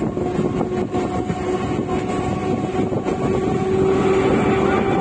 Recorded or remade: recorded